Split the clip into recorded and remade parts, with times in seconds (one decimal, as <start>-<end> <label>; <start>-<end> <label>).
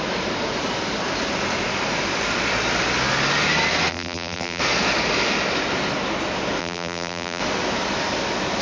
0.0-3.9 recorded; 3.9-4.6 remade; 4.6-6.6 recorded; 6.6-7.4 remade; 7.4-8.6 recorded